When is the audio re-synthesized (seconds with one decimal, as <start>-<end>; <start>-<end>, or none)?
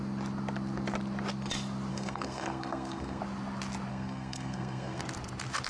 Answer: 1.9-3.2; 3.9-5.0